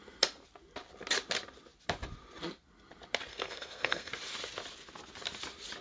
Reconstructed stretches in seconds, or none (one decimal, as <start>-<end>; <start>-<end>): 3.3-4.1